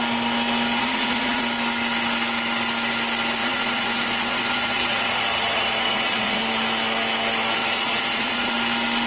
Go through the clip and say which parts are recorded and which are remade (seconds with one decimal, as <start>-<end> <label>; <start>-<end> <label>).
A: 0.0-0.8 recorded; 0.8-1.4 remade; 1.4-3.4 recorded; 3.4-6.4 remade; 6.4-7.6 recorded; 7.6-8.5 remade; 8.5-9.1 recorded